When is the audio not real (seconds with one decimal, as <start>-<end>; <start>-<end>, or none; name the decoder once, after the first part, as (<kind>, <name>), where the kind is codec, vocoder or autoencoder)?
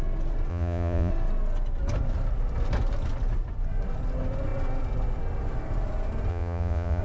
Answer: 0.5-1.1 (vocoder, Vocos); 6.3-7.0